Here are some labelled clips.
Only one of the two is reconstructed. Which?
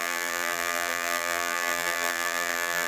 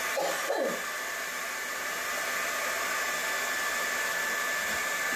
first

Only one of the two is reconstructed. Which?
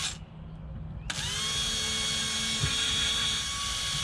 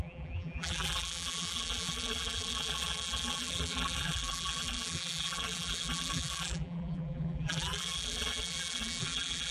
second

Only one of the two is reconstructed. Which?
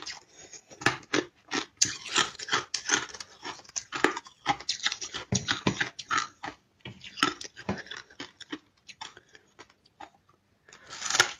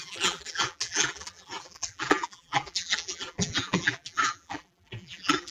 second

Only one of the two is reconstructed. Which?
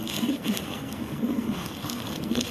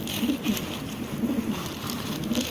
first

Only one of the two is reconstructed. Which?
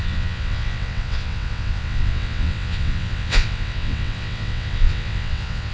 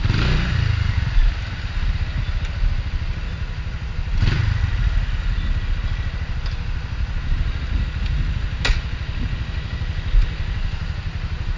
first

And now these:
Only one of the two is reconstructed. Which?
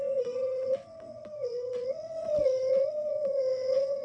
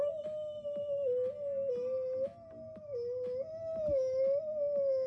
first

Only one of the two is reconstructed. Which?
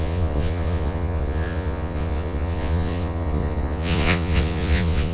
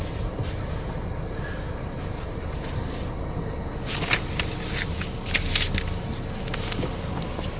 first